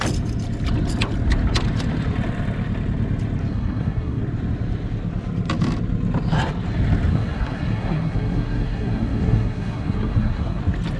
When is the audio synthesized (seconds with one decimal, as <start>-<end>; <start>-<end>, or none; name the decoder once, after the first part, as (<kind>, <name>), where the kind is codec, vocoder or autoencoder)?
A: 3.5-4.2 (codec, SNAC); 7.1-10.6